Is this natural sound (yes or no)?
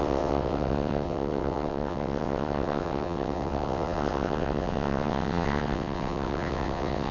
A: no